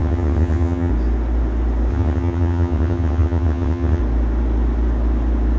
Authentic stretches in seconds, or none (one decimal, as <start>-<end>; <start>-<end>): 0.9-1.9; 4.0-5.6